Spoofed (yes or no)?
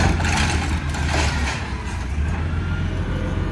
no